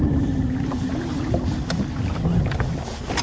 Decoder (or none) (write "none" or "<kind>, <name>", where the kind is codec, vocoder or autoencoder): none